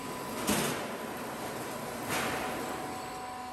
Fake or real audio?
real